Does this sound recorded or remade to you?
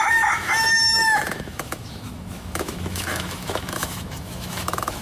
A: remade